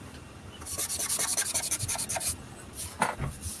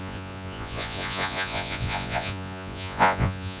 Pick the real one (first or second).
first